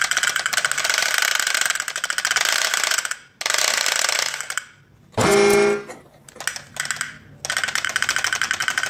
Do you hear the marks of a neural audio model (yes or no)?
no